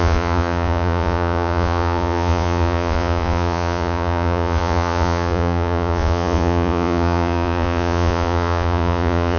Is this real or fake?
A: fake